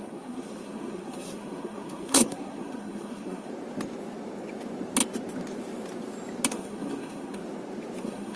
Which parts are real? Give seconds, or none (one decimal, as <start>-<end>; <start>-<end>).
3.5-6.5; 7.4-8.0